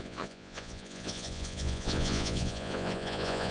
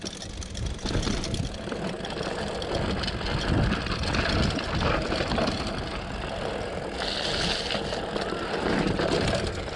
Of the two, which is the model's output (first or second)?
first